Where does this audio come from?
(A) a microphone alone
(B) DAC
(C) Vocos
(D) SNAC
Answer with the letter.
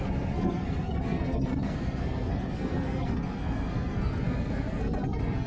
D